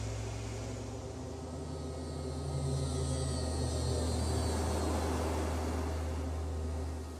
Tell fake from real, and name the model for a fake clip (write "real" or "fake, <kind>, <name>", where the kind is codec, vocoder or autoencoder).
real